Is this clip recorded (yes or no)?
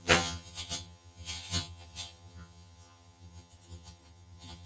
no